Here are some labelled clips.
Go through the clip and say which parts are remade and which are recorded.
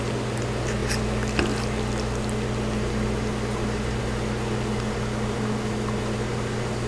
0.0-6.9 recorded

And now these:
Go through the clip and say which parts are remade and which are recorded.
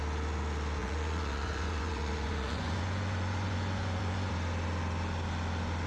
0.0-0.8 recorded; 0.8-4.3 remade; 4.3-5.9 recorded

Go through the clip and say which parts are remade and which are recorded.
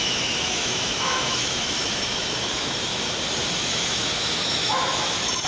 0.0-2.9 remade; 2.9-3.6 recorded; 3.6-5.5 remade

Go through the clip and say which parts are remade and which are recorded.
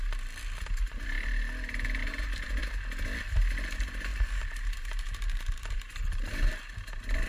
0.0-2.0 recorded; 2.0-2.6 remade; 2.6-4.1 recorded; 4.1-6.7 remade; 6.7-7.3 recorded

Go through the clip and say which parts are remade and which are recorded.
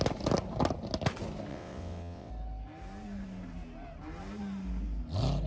0.0-1.5 recorded; 1.5-2.3 remade; 2.3-5.5 recorded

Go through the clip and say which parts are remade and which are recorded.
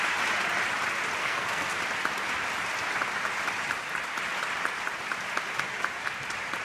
0.0-1.2 recorded; 1.2-1.7 remade; 1.7-6.6 recorded